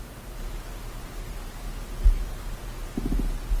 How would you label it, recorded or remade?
recorded